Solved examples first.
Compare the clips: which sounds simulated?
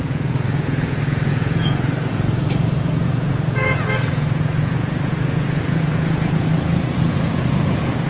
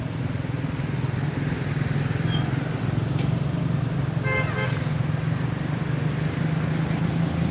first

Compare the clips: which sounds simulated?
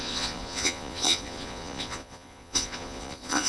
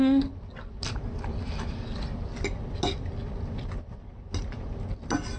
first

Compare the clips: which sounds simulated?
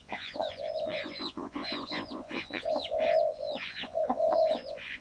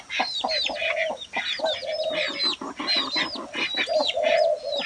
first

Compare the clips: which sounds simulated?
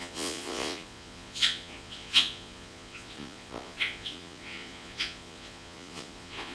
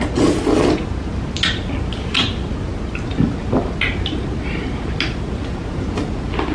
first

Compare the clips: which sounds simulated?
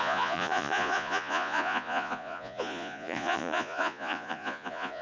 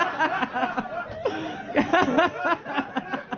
first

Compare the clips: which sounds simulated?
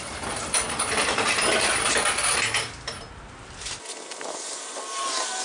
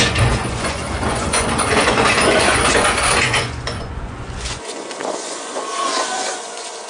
second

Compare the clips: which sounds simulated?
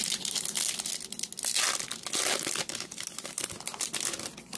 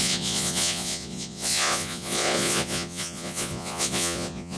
second